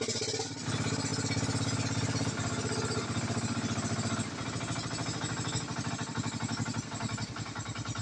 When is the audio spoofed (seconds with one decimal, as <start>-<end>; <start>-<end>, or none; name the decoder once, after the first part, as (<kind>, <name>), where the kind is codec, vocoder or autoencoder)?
none